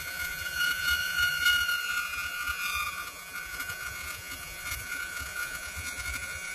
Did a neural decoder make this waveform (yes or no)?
yes